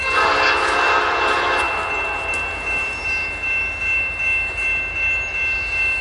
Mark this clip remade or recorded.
recorded